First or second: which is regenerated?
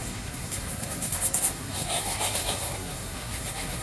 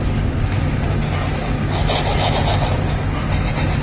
first